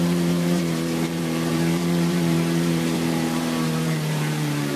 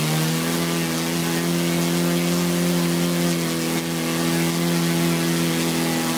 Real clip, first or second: second